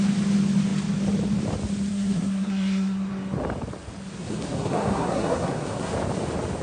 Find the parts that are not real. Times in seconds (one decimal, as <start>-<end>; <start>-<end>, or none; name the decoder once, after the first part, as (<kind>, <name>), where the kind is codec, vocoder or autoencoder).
1.9-3.1 (codec, SNAC); 4.1-5.9